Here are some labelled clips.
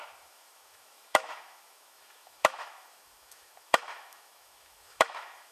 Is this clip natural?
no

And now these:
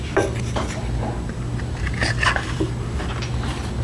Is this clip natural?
yes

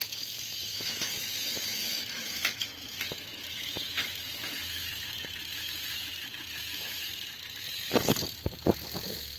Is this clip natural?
no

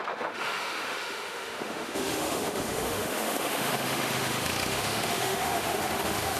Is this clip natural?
no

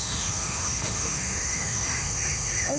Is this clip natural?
no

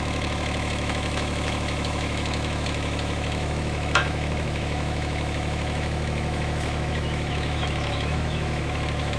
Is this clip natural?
no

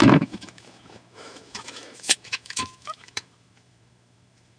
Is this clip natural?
no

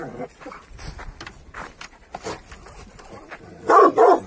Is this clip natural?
yes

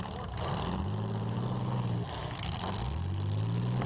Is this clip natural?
yes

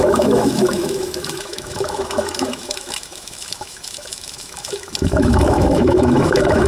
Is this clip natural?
no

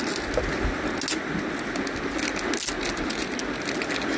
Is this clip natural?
yes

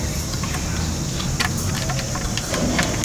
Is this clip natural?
yes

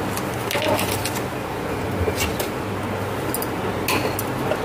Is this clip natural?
yes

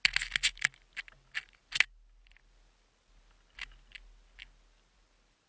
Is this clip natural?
yes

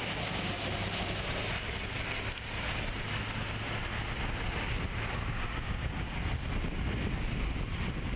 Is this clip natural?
yes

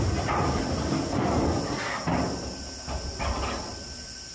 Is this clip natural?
yes